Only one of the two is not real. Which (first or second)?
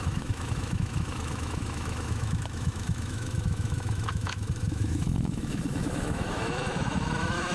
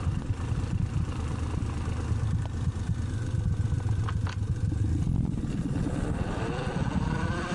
first